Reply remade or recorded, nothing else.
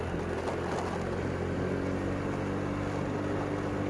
recorded